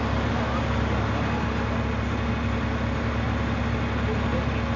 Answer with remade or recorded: recorded